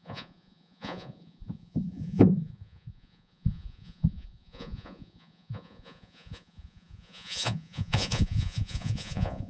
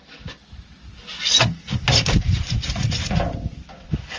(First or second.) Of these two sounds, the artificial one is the first